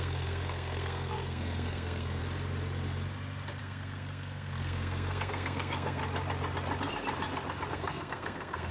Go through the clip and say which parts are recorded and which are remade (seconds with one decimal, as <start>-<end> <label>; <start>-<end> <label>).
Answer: 0.0-2.2 remade; 2.2-3.6 recorded; 3.6-6.0 remade; 6.0-7.7 recorded; 7.7-8.7 remade